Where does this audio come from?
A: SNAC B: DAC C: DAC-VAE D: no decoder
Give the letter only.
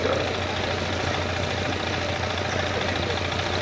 D